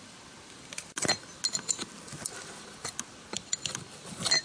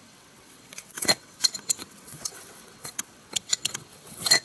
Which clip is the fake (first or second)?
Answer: second